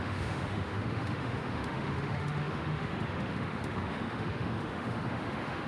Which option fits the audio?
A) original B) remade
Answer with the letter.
B